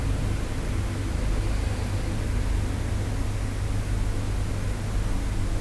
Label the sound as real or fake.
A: real